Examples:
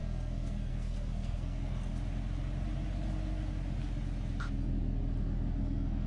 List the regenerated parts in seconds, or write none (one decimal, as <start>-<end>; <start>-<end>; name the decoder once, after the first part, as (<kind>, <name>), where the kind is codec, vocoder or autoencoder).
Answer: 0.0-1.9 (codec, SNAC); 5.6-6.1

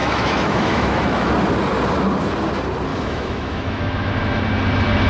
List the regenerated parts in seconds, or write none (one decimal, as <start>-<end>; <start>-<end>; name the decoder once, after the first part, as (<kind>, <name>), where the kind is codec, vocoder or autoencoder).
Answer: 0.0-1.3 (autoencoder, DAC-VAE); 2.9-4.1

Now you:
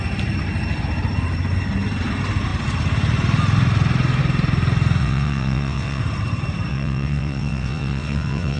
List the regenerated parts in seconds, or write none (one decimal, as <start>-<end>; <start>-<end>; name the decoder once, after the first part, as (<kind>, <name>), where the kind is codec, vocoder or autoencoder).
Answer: 5.0-6.0 (vocoder, WaveNeXt); 6.7-8.6

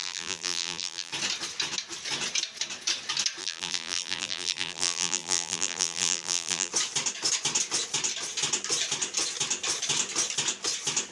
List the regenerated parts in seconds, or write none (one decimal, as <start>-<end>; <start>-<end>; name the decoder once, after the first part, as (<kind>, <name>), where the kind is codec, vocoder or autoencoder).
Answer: 0.0-1.1 (vocoder, BigVGAN v2); 3.4-6.7

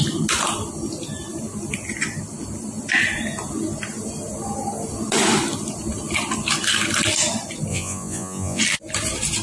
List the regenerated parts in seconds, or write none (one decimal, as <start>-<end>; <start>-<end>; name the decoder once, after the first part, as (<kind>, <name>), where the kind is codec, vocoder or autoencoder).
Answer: 7.7-8.6 (vocoder, Vocos)

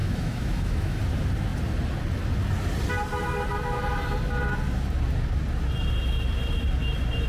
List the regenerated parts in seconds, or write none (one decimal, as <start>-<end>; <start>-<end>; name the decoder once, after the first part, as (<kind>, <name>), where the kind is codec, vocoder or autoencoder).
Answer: 0.0-1.0 (autoencoder, DAC-VAE)

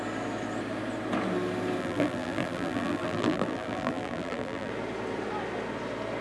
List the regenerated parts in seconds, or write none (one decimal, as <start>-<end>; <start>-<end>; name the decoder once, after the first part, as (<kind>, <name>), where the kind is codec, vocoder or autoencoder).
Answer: 1.8-4.7 (vocoder, BigVGAN v2)